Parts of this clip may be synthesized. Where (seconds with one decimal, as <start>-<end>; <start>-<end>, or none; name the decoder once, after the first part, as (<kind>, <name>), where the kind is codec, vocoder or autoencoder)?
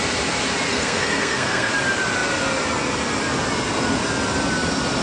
0.7-1.7 (codec, SNAC)